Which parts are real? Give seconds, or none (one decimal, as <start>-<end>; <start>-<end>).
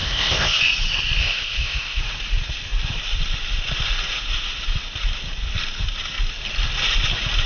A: 0.6-1.2; 2.0-7.5